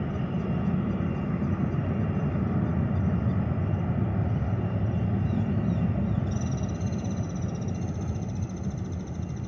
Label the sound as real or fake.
real